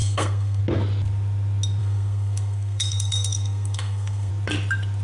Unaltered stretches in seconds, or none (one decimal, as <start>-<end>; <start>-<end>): 0.6-1.8; 4.3-5.0